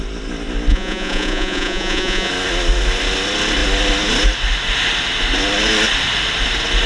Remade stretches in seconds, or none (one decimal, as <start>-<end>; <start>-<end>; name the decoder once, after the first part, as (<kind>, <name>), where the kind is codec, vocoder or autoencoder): 0.7-2.3 (vocoder, Vocos)